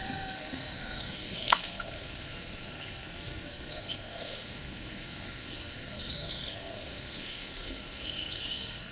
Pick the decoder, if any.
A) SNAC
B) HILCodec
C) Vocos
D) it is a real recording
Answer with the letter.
A